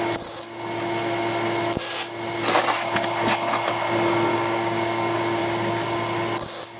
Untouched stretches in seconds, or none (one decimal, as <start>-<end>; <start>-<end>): 0.0-4.3; 5.4-6.8